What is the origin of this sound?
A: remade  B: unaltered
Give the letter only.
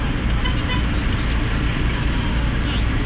B